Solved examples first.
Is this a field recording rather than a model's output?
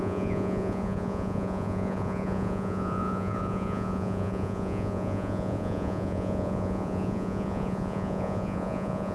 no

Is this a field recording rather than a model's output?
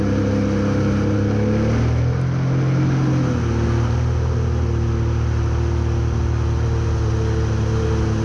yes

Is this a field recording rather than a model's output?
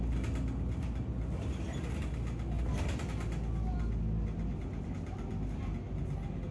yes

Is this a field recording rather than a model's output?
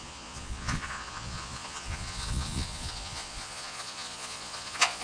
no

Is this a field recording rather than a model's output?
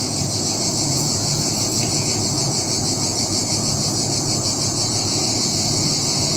no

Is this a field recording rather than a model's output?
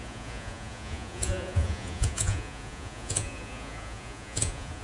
no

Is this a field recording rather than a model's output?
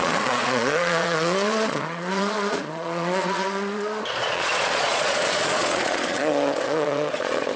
no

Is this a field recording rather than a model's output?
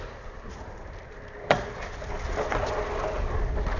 yes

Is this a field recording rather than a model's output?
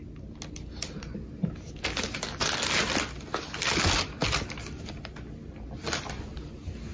yes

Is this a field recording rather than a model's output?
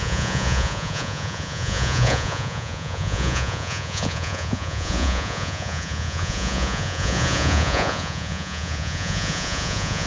no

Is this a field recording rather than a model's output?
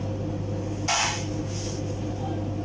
yes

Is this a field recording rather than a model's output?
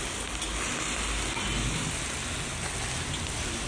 yes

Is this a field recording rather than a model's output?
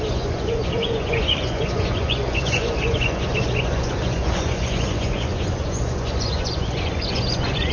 no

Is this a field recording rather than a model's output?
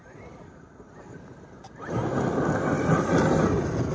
yes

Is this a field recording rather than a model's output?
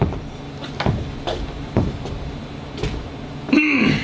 yes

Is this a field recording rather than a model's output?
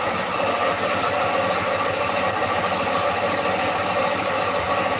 yes